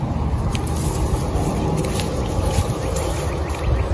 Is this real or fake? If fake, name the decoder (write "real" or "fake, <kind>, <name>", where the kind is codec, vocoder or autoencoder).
real